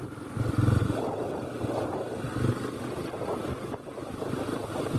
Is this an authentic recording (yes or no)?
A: yes